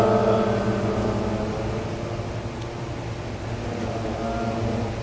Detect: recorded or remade recorded